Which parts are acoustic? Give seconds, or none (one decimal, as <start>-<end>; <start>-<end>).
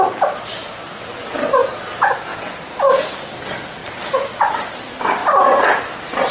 0.0-1.2; 1.8-2.3; 3.3-6.3